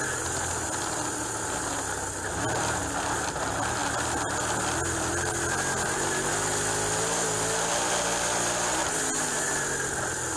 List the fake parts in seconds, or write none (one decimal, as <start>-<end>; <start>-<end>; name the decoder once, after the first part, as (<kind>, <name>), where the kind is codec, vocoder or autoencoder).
none